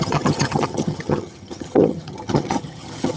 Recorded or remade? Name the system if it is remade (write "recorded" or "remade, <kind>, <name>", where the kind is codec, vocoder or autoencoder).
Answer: remade, vocoder, HiFi-GAN